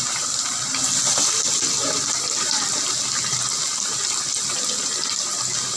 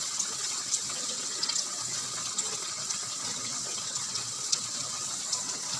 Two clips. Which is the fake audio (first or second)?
second